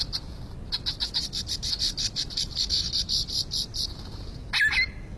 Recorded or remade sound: recorded